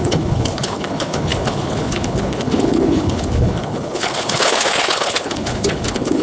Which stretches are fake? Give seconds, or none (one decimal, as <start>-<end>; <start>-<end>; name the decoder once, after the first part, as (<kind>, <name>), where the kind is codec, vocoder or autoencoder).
0.0-6.2 (codec, HILCodec)